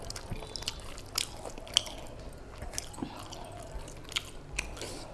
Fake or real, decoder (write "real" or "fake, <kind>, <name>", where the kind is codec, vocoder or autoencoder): real